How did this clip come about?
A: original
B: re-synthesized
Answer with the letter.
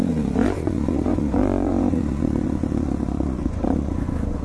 B